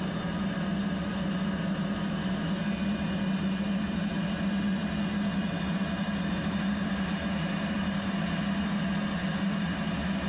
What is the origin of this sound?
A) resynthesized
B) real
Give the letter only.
B